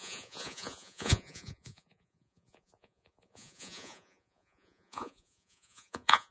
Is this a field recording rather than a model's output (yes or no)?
no